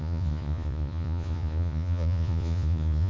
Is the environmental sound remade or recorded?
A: remade